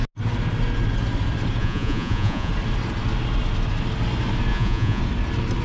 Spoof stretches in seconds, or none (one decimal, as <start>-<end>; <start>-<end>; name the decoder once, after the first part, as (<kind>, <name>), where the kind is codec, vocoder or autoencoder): 1.6-2.5 (vocoder, Vocos); 4.5-5.0